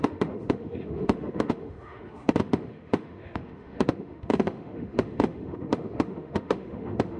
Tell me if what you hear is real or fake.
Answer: fake